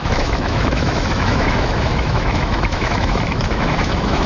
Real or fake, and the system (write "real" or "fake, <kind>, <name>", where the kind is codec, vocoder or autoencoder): fake, autoencoder, DAC-VAE